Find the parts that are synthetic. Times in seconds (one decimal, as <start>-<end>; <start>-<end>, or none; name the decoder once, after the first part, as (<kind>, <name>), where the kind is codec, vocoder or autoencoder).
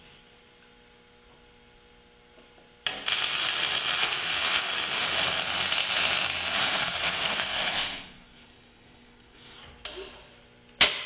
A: 4.0-4.7 (codec, SNAC); 6.5-9.6